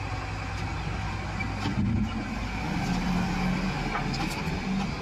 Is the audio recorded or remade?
recorded